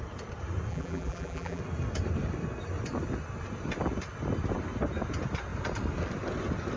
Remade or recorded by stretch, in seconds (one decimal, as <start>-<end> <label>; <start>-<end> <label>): 0.0-0.7 recorded; 0.7-1.6 remade; 1.6-6.8 recorded